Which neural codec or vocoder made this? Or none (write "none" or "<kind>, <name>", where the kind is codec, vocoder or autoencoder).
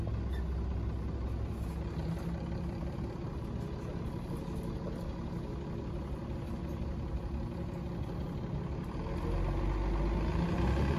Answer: none